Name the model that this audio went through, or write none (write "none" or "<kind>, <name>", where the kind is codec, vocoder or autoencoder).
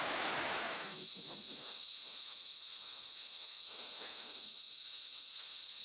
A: autoencoder, DAC-VAE